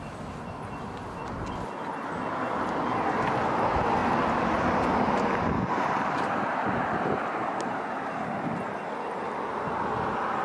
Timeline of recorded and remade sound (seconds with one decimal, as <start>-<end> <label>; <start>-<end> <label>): 0.0-10.4 recorded